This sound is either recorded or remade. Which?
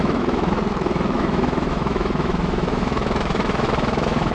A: remade